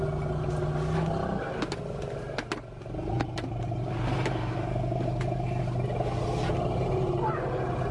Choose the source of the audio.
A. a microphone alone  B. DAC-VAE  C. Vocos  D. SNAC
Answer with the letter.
A